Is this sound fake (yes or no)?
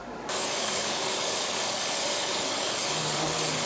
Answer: yes